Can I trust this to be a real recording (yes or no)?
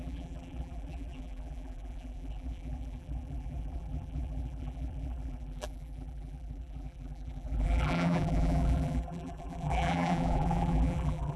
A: no